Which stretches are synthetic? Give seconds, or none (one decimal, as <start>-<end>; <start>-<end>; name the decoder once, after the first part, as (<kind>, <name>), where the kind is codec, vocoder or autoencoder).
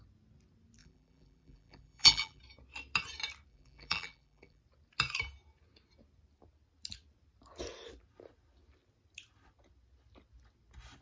0.8-2.4 (vocoder, BigVGAN v2); 3.5-4.6